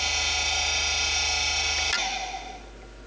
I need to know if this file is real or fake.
real